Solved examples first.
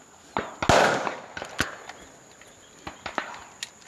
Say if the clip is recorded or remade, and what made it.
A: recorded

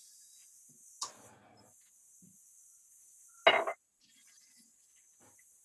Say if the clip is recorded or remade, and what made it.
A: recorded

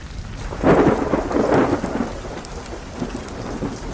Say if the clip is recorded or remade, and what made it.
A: recorded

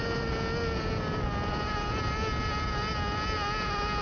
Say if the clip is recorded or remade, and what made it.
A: recorded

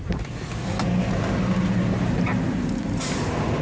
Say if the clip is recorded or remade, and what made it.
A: recorded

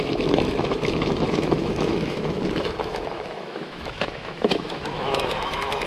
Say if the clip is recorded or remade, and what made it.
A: remade, autoencoder, DAC-VAE